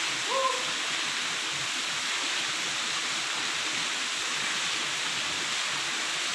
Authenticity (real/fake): real